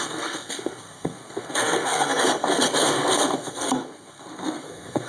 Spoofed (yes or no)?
yes